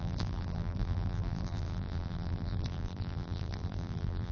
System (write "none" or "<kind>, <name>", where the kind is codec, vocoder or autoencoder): vocoder, BigVGAN v2